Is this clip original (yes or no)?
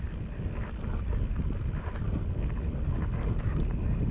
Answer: yes